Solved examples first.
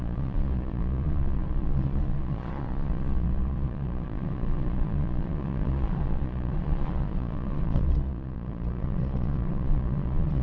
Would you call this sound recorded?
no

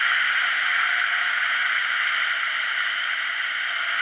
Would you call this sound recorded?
yes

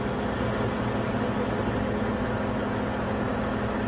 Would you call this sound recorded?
yes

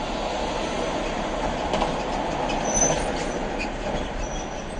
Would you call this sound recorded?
yes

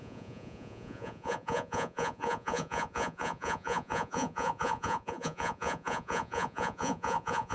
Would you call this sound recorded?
no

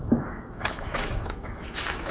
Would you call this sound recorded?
no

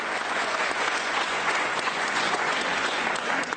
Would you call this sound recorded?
no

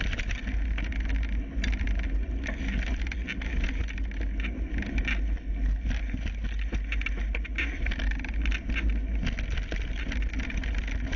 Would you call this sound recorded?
yes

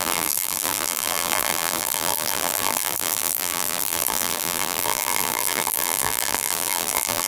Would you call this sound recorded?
no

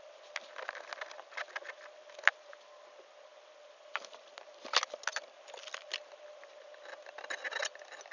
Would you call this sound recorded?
yes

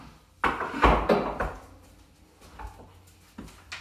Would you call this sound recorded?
yes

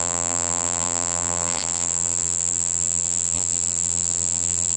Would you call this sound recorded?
no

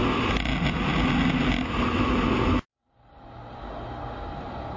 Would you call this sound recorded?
yes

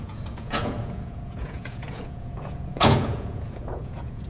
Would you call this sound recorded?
no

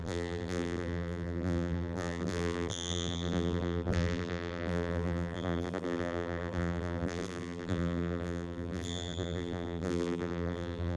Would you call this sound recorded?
no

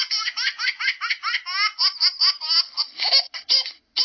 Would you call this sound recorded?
yes